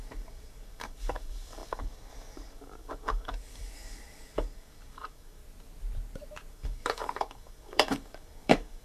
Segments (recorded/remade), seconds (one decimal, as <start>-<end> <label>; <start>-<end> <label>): 0.0-5.4 remade; 5.4-6.5 recorded; 6.5-8.8 remade